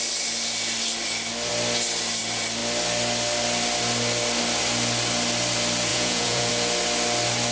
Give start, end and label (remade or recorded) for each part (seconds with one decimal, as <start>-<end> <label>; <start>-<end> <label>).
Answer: 0.0-5.9 recorded; 5.9-6.5 remade; 6.5-7.5 recorded

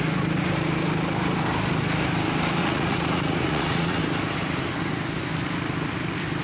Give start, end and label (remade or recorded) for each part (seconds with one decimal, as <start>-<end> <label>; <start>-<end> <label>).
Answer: 0.0-2.6 recorded; 2.6-4.0 remade; 4.0-6.4 recorded

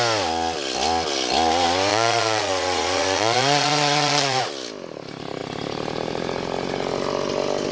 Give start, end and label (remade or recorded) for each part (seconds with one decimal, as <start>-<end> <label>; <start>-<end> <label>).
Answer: 0.0-1.9 recorded; 1.9-4.4 remade; 4.4-7.7 recorded

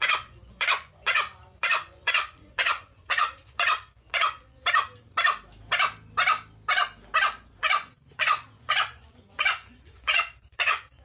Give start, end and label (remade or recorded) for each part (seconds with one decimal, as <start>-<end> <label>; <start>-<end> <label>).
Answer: 0.0-4.6 remade; 4.6-7.2 recorded; 7.2-11.0 remade

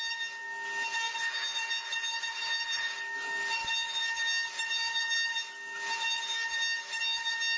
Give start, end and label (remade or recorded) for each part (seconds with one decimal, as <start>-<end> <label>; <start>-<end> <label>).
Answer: 0.0-7.6 recorded

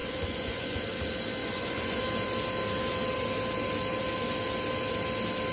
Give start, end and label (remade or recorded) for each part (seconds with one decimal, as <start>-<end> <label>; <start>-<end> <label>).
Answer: 0.0-0.8 remade; 0.8-1.4 recorded; 1.4-2.0 remade; 2.0-5.5 recorded

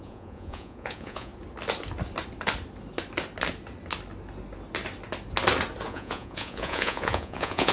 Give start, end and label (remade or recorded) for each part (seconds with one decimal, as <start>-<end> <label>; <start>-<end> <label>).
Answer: 0.0-1.3 remade; 1.3-5.9 recorded; 5.9-7.7 remade